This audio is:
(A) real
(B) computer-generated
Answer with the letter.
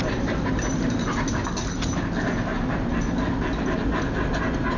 A